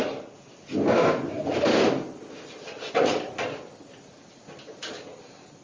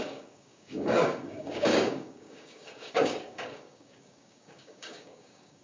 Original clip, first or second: first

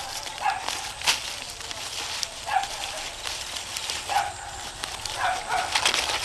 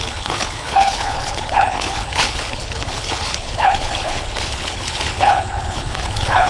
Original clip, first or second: first